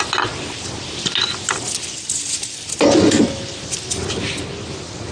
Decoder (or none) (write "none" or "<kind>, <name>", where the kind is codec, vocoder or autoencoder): none